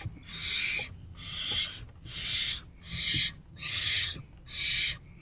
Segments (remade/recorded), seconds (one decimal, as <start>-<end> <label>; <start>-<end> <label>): 0.0-3.5 recorded; 3.5-4.2 remade; 4.2-5.2 recorded